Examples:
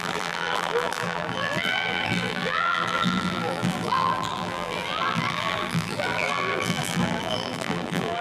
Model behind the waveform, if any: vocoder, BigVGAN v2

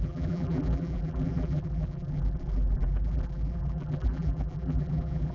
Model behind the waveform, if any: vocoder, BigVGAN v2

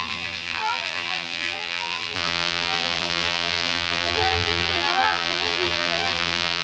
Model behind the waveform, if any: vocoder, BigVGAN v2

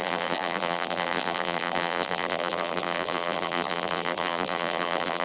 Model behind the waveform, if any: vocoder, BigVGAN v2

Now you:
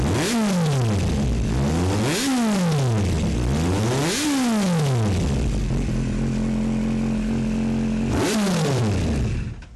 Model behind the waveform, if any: none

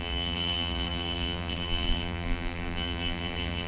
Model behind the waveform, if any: vocoder, BigVGAN v2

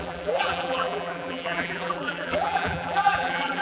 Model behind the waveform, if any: vocoder, BigVGAN v2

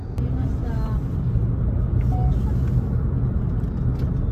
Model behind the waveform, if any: none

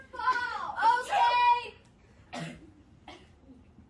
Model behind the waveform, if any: vocoder, BigVGAN v2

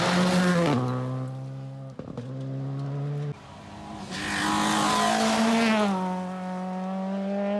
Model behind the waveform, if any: none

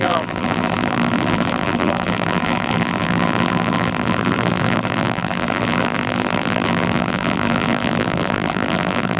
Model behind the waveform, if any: vocoder, BigVGAN v2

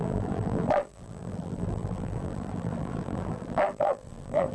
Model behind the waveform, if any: vocoder, BigVGAN v2